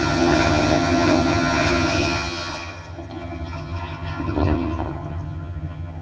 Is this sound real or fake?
fake